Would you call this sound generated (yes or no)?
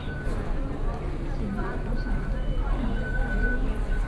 no